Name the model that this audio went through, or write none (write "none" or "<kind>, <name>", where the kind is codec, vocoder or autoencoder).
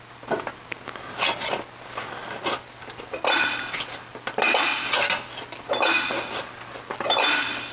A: none